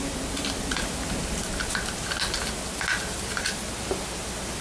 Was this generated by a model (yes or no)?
no